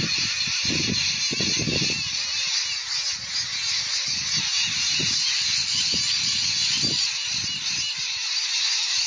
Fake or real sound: real